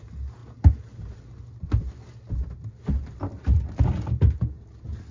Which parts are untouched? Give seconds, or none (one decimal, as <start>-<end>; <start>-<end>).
0.0-5.1

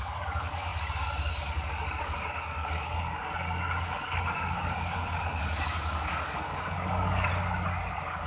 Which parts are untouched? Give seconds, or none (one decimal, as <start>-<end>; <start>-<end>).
7.3-7.9

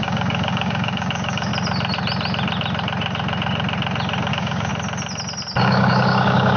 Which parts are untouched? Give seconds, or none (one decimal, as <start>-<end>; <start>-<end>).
1.5-4.3; 4.7-5.6

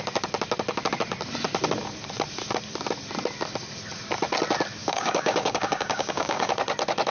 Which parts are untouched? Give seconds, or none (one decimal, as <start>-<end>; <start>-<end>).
0.0-4.8; 6.5-7.1

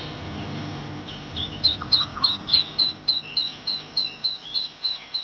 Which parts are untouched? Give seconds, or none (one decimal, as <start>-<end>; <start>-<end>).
0.0-2.1; 2.6-5.2